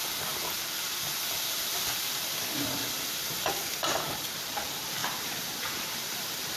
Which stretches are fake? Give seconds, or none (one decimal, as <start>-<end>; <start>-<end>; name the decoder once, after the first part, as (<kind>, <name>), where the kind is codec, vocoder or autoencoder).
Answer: 2.4-2.8 (vocoder, BigVGAN v2); 3.8-6.6